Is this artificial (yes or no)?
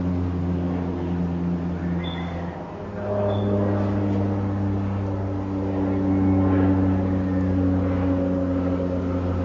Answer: no